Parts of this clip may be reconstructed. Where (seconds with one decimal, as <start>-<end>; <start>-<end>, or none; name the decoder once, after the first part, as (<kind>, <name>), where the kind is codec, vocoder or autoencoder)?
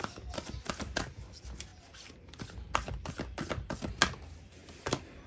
none